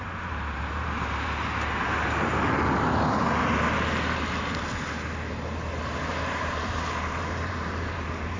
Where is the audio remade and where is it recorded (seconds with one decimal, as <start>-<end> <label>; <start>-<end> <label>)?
0.0-2.3 remade; 2.3-6.1 recorded; 6.1-8.4 remade